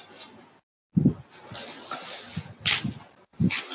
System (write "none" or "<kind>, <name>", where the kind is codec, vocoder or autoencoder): none